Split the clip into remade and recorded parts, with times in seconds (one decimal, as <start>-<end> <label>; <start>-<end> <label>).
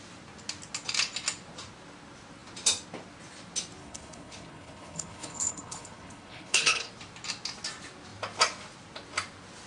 0.0-3.8 recorded; 3.8-6.9 remade; 6.9-9.7 recorded